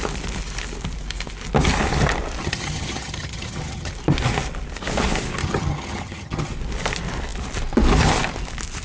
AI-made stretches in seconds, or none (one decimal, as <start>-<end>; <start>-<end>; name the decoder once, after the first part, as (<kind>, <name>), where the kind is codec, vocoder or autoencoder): 2.4-3.9 (vocoder, HiFi-GAN); 5.4-6.5